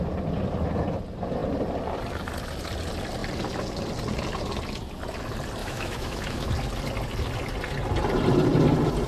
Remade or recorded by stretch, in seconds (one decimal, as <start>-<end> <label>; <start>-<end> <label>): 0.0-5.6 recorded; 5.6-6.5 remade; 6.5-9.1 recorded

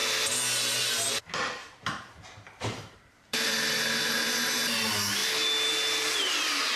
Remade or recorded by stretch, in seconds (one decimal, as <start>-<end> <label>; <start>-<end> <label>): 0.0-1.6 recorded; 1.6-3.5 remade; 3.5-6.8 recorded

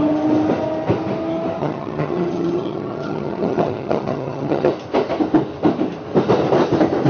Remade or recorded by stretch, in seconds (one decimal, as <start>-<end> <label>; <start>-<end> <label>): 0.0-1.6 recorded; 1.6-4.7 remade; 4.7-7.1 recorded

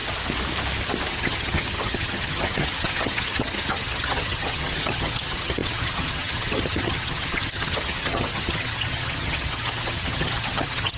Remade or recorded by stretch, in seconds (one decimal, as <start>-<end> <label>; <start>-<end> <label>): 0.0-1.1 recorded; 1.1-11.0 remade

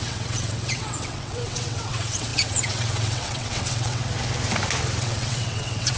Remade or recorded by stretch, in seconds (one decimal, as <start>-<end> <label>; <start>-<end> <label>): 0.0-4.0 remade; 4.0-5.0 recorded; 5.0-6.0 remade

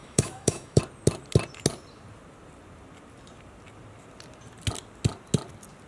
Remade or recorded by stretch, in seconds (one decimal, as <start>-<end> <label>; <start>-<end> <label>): 0.0-0.8 remade; 0.8-5.9 recorded

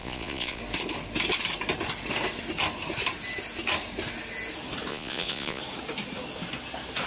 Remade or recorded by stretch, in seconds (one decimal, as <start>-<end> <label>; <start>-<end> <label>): 0.0-0.6 remade; 0.6-4.9 recorded; 4.9-5.6 remade; 5.6-7.1 recorded